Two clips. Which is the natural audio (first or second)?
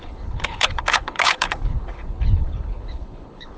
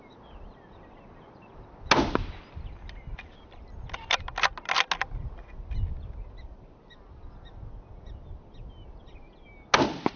second